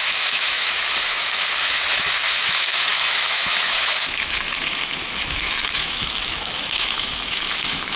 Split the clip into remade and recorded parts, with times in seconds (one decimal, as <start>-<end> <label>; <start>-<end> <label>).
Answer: 0.0-8.0 remade